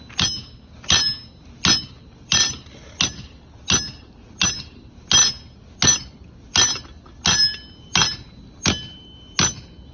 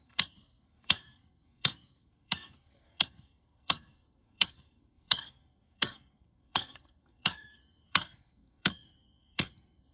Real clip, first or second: first